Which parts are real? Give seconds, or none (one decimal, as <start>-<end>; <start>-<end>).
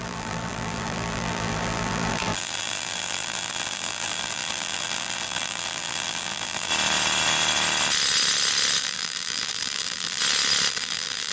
6.7-8.8; 10.2-10.7